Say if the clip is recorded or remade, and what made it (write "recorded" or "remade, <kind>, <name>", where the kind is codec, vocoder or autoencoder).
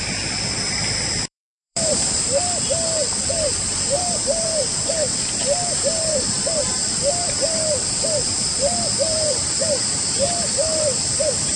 remade, vocoder, BigVGAN v2